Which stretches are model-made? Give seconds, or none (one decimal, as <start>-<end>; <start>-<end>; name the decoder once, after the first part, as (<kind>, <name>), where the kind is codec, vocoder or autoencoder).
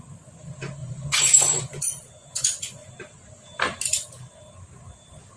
0.8-2.9 (vocoder, Vocos)